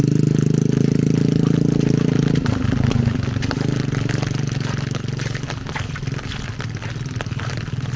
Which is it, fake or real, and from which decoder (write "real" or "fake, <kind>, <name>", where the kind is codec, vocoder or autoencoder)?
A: real